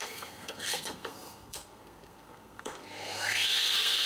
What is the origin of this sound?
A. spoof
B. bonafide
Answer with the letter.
A